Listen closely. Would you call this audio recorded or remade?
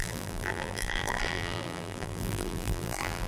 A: remade